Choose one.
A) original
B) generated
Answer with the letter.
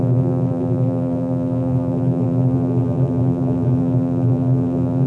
B